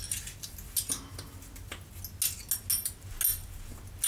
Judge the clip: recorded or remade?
recorded